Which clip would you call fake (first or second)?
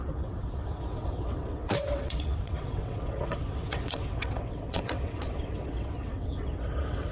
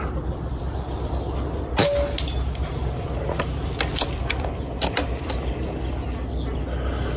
first